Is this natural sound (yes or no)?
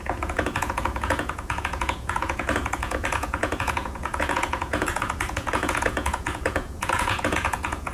no